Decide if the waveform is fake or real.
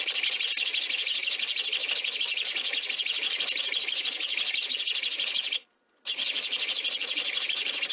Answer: real